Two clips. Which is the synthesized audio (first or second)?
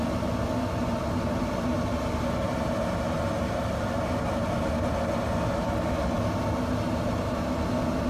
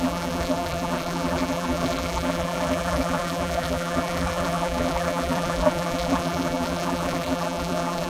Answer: second